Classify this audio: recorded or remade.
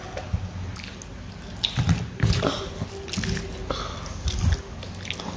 recorded